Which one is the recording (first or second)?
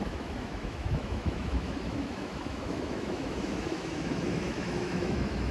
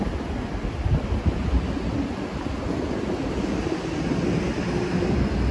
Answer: second